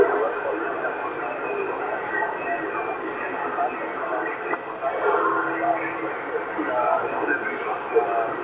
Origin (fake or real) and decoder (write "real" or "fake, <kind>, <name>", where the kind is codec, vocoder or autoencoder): real